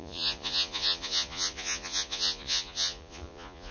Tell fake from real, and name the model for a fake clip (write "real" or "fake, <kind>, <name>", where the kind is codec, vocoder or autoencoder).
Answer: fake, vocoder, Vocos